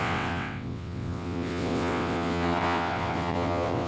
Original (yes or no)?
no